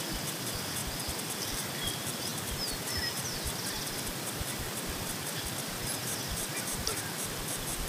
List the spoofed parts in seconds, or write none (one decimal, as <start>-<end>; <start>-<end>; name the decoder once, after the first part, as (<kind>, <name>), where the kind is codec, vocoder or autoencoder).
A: 0.0-0.8 (vocoder, BigVGAN v2); 1.5-2.3; 2.8-7.9